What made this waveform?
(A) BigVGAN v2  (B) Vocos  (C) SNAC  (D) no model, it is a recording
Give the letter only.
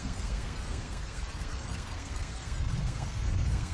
C